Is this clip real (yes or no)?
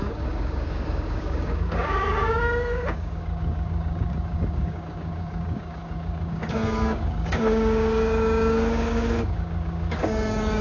no